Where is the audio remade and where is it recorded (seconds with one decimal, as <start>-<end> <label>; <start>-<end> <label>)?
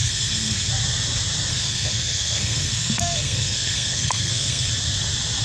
0.0-0.7 remade; 0.7-1.5 recorded; 1.5-4.7 remade; 4.7-5.4 recorded